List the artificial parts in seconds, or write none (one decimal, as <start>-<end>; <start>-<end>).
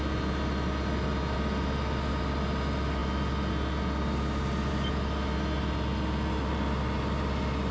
none